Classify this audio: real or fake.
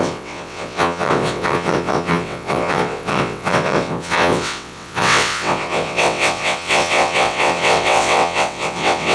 fake